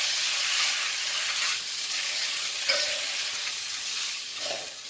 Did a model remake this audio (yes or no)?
yes